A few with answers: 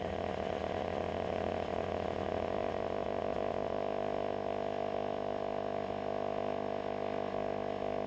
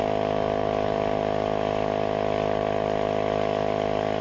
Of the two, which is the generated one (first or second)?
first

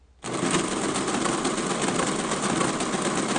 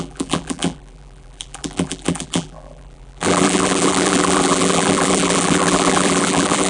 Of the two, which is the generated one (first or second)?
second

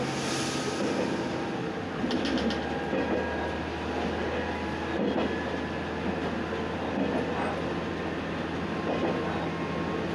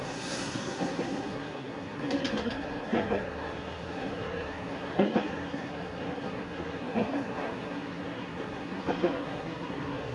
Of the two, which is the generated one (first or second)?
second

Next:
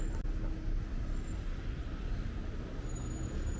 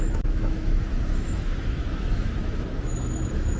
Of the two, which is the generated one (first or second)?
second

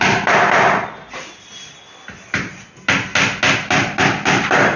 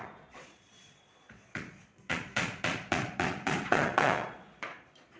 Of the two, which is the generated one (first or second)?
second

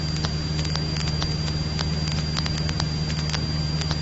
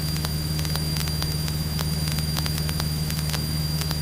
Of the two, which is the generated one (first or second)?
second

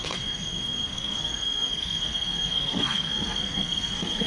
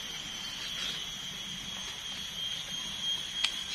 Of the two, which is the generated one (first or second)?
first